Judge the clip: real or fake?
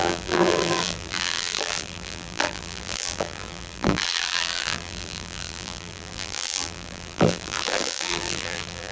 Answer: fake